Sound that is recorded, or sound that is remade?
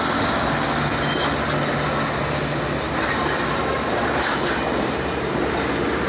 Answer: recorded